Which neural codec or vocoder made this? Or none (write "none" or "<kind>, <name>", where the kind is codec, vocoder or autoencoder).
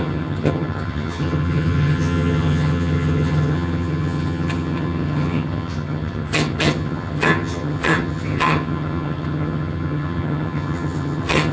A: vocoder, HiFi-GAN